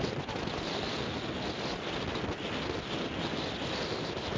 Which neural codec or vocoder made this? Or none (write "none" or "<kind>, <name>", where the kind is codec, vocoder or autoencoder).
none